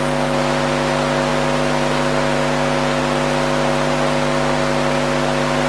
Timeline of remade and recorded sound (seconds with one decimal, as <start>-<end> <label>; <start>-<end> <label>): 0.0-5.7 recorded

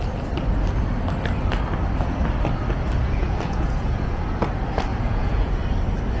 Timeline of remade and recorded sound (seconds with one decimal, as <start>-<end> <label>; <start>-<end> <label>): 0.0-3.0 recorded; 3.0-4.2 remade; 4.2-4.9 recorded; 4.9-5.5 remade; 5.5-6.2 recorded

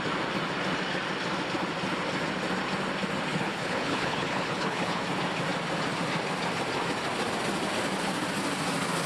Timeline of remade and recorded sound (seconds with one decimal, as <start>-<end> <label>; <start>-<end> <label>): 0.0-3.3 recorded; 3.3-5.0 remade; 5.0-9.1 recorded

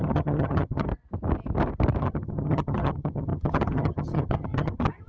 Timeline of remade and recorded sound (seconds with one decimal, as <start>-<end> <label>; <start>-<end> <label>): 0.0-0.9 remade; 0.9-2.0 recorded; 2.0-5.1 remade